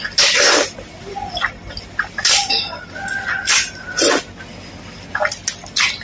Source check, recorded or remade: recorded